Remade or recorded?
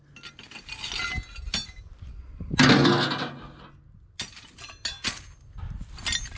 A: recorded